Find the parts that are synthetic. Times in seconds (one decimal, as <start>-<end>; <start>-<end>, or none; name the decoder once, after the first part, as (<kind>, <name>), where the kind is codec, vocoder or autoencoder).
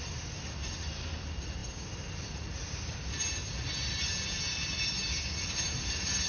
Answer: none